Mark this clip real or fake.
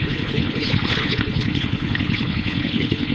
fake